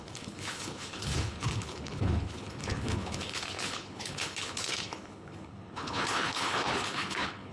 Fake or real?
fake